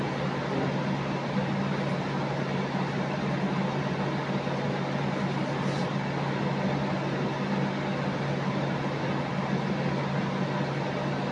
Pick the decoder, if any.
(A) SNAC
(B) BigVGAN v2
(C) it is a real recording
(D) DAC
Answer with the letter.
C